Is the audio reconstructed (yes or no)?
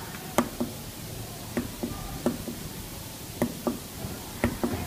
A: no